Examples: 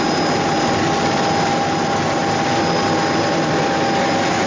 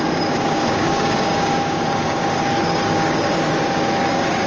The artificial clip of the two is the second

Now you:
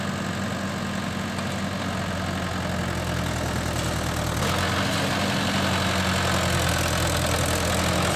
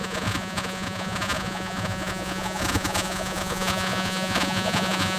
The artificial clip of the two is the second